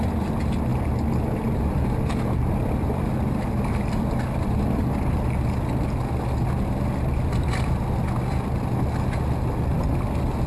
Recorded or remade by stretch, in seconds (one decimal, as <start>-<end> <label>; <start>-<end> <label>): 0.0-10.5 recorded